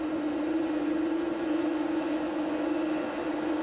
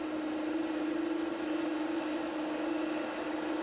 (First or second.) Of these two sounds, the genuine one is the second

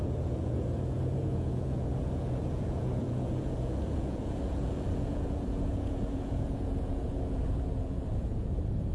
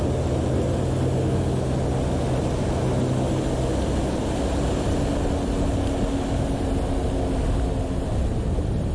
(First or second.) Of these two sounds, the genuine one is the second